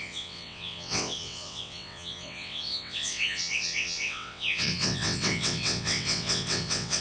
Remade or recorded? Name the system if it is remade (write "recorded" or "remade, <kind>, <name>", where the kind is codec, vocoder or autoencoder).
remade, vocoder, WaveNeXt